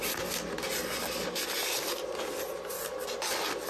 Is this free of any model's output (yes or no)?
yes